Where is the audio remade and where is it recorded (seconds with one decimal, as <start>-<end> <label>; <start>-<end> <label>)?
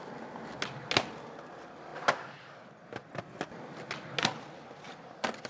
0.0-5.5 recorded